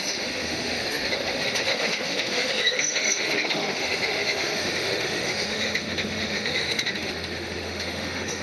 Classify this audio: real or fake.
fake